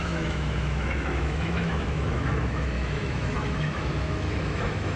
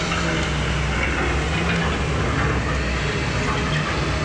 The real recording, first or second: second